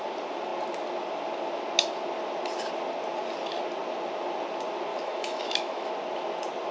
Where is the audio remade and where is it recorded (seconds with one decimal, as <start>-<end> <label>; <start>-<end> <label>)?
0.0-4.9 recorded; 4.9-5.9 remade; 5.9-6.7 recorded

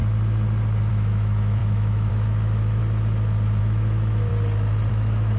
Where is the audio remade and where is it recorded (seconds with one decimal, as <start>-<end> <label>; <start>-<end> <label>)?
0.0-0.9 recorded; 0.9-2.8 remade; 2.8-3.6 recorded; 3.6-4.3 remade; 4.3-4.9 recorded; 4.9-5.4 remade

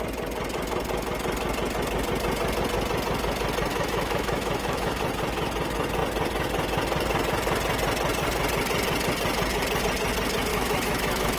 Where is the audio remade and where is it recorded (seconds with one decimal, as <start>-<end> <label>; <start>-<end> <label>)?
0.0-3.7 recorded; 3.7-5.0 remade; 5.0-10.5 recorded; 10.5-11.4 remade

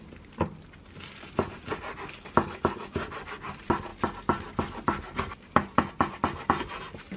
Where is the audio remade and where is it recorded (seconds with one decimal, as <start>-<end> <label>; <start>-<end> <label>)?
0.0-7.2 recorded

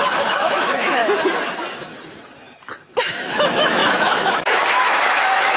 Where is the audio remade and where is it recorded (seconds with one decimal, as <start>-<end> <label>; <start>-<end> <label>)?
0.0-1.0 remade; 1.0-3.0 recorded; 3.0-5.6 remade

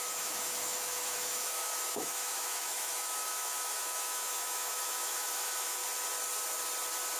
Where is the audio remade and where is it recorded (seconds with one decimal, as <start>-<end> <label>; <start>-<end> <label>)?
0.0-5.8 remade; 5.8-7.2 recorded

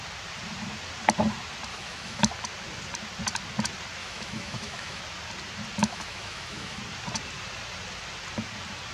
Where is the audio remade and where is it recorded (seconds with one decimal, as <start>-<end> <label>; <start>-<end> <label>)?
0.0-1.7 recorded; 1.7-2.3 remade; 2.3-4.0 recorded; 4.0-5.0 remade; 5.0-5.8 recorded; 5.8-6.8 remade; 6.8-8.9 recorded

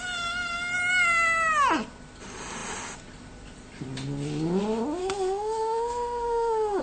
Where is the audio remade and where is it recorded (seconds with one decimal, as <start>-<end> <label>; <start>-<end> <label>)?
0.0-5.0 recorded; 5.0-6.8 remade